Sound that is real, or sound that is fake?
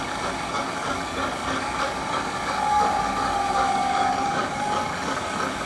fake